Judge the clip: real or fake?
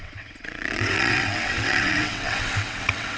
fake